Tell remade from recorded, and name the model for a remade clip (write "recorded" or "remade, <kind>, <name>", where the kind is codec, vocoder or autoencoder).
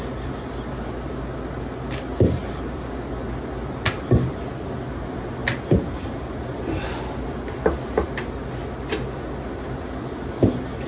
recorded